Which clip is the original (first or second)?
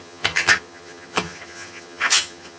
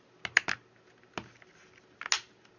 second